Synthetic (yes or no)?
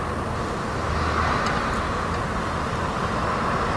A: no